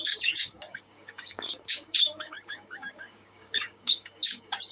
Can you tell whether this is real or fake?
fake